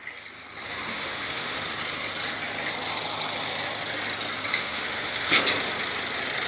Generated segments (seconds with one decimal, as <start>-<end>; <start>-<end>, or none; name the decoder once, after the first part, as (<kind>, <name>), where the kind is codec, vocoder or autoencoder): 0.9-1.6 (autoencoder, DAC-VAE); 4.5-5.4